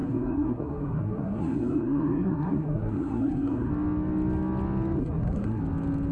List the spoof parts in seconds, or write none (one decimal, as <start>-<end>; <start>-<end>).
0.0-3.7; 5.0-5.6